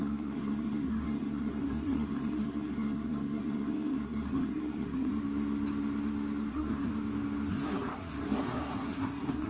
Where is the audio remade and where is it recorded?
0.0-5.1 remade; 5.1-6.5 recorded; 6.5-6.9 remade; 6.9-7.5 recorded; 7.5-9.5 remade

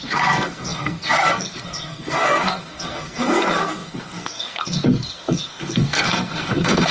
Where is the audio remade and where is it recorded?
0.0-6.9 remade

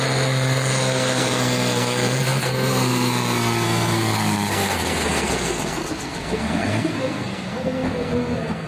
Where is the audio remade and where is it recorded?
0.0-8.7 remade

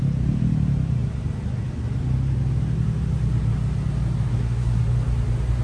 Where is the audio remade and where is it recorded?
0.0-4.3 recorded; 4.3-4.8 remade; 4.8-5.6 recorded

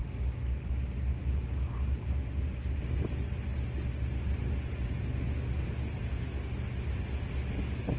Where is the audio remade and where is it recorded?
0.0-8.0 recorded

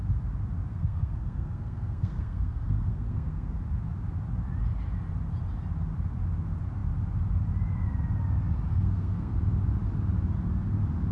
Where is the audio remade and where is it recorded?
0.0-0.7 recorded; 0.7-3.6 remade; 3.6-8.7 recorded; 8.7-9.3 remade; 9.3-11.1 recorded